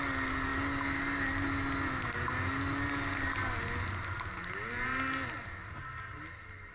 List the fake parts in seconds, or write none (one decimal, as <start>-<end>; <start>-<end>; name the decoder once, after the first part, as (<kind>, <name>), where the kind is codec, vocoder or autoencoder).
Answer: none

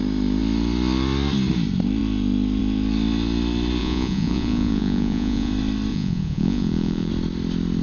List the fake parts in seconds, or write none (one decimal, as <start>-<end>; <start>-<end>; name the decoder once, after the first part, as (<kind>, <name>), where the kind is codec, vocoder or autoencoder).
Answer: 3.8-5.5 (vocoder, Vocos); 5.9-7.1

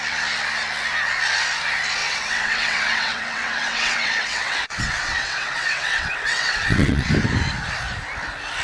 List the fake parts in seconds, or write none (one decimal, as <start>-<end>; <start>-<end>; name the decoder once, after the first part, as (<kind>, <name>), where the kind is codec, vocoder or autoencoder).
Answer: 2.0-7.1 (vocoder, WaveNeXt)

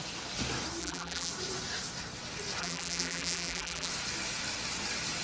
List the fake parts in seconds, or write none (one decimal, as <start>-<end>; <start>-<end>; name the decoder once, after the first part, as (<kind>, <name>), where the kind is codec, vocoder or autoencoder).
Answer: 0.8-1.3 (vocoder, BigVGAN v2); 2.6-3.9

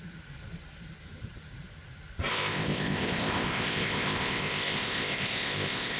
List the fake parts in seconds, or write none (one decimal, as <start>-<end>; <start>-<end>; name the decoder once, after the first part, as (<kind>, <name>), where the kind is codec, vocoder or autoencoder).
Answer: 2.3-6.0 (codec, ZipCodec)

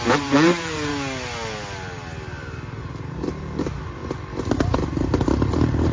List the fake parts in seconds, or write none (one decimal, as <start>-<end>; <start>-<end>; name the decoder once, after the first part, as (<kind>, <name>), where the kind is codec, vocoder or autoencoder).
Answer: 0.0-0.9 (vocoder, BigVGAN v2); 2.8-4.0; 4.8-5.9

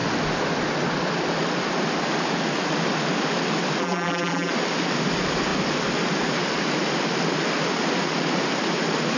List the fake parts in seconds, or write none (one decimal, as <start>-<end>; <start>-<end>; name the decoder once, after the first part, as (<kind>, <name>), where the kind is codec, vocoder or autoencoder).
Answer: 3.8-4.5 (vocoder, BigVGAN v2)

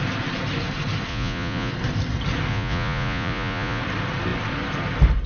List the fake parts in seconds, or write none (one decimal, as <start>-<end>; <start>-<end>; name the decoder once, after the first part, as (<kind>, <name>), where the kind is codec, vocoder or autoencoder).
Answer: 1.1-1.7 (vocoder, Vocos); 2.5-3.8